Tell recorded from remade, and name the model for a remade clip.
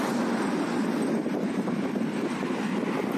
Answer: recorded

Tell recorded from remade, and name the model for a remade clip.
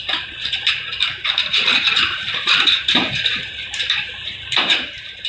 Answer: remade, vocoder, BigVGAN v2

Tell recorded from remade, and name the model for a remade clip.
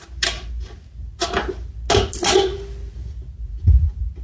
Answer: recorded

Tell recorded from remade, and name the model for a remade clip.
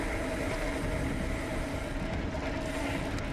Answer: recorded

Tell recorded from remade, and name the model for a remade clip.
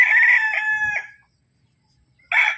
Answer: recorded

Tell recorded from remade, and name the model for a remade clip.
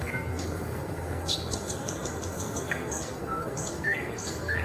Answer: remade, codec, SNAC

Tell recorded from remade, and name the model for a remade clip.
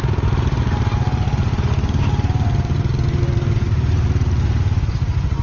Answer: recorded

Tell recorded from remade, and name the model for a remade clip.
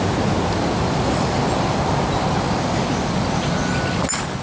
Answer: recorded